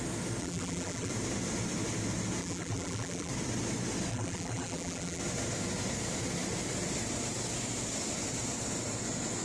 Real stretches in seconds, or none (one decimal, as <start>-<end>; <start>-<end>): 0.0-0.4; 1.1-2.4; 3.3-4.1; 5.2-9.4